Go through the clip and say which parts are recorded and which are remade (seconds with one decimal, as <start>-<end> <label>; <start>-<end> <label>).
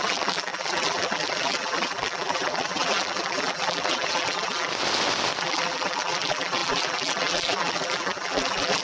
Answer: 0.0-4.7 remade; 4.7-5.4 recorded; 5.4-8.8 remade